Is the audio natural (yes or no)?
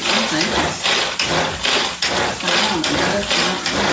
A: yes